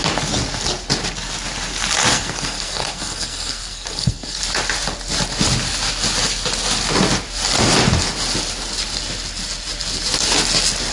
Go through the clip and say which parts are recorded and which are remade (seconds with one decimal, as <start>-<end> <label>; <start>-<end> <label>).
0.0-2.1 recorded; 2.1-4.4 remade; 4.4-10.9 recorded